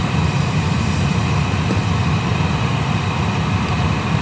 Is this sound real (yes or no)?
yes